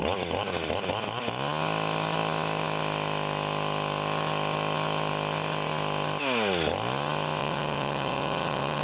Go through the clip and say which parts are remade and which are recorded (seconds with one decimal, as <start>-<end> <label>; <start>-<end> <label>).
0.0-7.4 recorded; 7.4-8.8 remade